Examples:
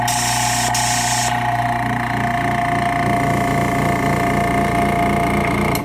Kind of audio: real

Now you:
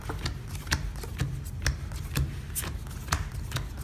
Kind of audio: real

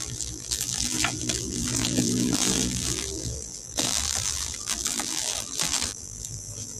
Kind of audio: fake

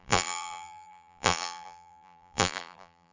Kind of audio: fake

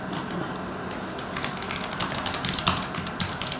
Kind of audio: real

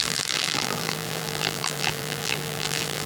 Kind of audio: fake